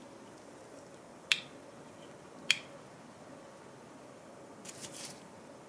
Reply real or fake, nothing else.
real